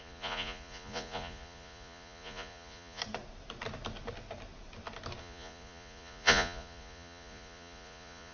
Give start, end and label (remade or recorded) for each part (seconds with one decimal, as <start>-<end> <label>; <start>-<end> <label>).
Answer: 0.0-3.0 remade; 3.0-5.2 recorded; 5.2-8.3 remade